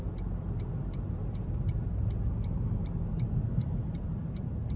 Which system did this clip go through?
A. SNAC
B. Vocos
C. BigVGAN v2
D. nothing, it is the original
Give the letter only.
D